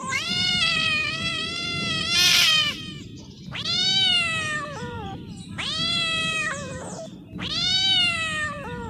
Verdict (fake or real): fake